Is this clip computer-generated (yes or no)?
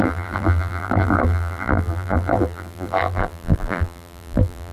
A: yes